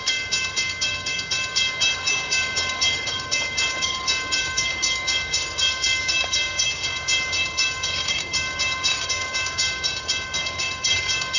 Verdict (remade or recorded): remade